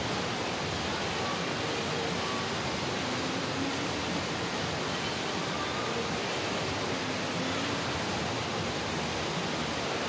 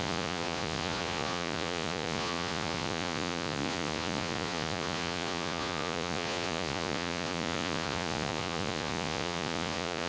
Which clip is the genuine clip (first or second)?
first